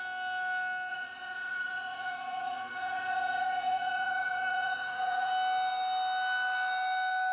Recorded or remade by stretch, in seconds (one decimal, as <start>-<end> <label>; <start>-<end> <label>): 0.0-0.9 recorded; 0.9-5.3 remade; 5.3-7.3 recorded